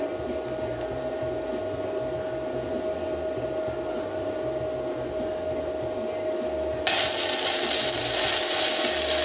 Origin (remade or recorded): recorded